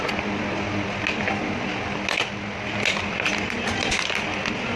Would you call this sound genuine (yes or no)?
yes